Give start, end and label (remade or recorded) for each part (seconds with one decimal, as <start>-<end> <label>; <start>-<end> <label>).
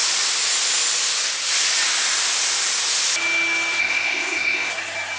0.0-3.8 recorded; 3.8-4.7 remade; 4.7-5.2 recorded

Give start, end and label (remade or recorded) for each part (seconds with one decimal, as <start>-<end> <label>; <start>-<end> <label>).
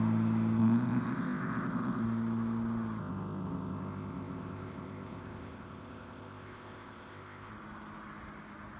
0.0-0.6 recorded; 0.6-2.0 remade; 2.0-3.0 recorded; 3.0-7.5 remade; 7.5-8.8 recorded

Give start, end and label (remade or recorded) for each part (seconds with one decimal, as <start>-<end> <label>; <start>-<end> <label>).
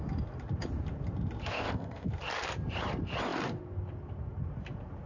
0.0-1.5 recorded; 1.5-2.1 remade; 2.1-5.1 recorded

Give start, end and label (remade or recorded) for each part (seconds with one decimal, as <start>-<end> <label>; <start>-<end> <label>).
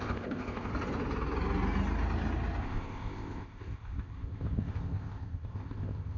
0.0-0.7 remade; 0.7-2.6 recorded; 2.6-6.2 remade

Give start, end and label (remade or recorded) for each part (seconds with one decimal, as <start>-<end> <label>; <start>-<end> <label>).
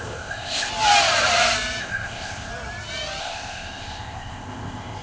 0.0-0.7 remade; 0.7-1.8 recorded; 1.8-2.5 remade; 2.5-3.2 recorded; 3.2-5.0 remade